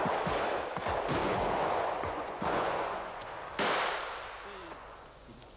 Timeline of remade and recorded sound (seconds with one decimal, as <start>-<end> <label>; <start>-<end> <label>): 0.0-1.2 recorded; 1.2-3.3 remade; 3.3-4.6 recorded; 4.6-5.6 remade

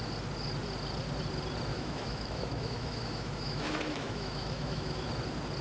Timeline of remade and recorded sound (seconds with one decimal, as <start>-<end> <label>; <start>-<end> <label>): 0.0-1.7 recorded; 1.7-5.1 remade; 5.1-5.6 recorded

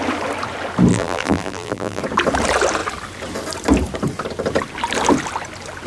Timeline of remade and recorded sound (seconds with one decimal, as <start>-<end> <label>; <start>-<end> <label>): 0.0-0.9 recorded; 0.9-2.0 remade; 2.0-5.9 recorded

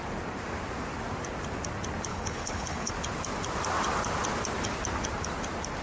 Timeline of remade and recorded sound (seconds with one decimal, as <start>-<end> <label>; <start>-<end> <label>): 0.0-2.1 recorded; 2.1-2.9 remade; 2.9-5.8 recorded

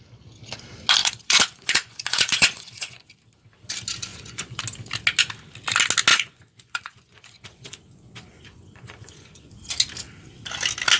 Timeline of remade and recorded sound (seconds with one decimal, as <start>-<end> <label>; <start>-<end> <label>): 0.0-1.0 recorded; 1.0-3.1 remade; 3.1-4.1 recorded; 4.1-4.6 remade; 4.6-6.1 recorded; 6.1-9.5 remade; 9.5-11.0 recorded

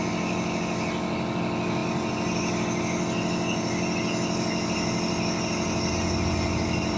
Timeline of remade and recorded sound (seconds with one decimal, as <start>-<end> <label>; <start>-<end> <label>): 0.0-7.0 recorded